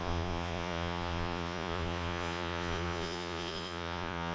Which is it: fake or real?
fake